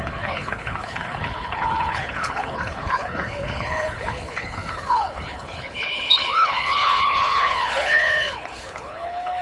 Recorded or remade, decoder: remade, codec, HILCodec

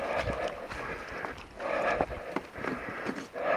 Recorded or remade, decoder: recorded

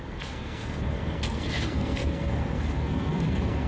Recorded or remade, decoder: remade, codec, SNAC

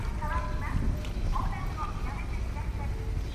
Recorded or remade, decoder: recorded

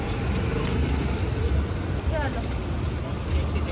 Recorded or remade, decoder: recorded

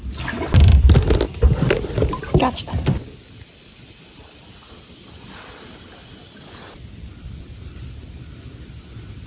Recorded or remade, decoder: recorded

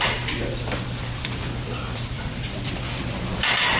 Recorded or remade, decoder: remade, vocoder, BigVGAN v2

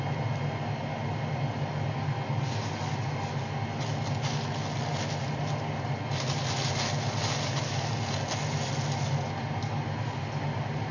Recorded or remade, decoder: recorded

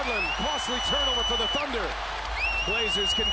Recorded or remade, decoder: recorded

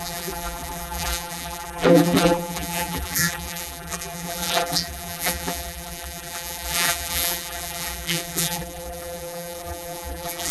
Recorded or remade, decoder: remade, vocoder, BigVGAN v2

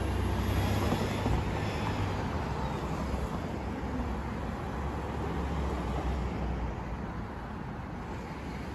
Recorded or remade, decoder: recorded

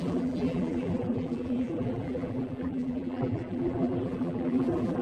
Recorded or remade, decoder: remade, vocoder, BigVGAN v2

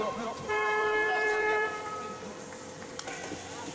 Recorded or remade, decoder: remade, vocoder, BigVGAN v2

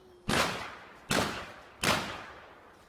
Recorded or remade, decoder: recorded